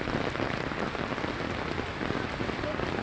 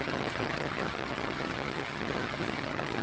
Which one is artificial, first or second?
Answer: second